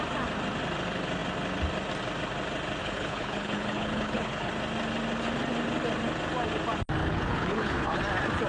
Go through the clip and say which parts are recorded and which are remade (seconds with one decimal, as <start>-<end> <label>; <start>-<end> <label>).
0.0-2.8 recorded; 2.8-4.5 remade; 4.5-7.0 recorded; 7.0-8.0 remade; 8.0-8.5 recorded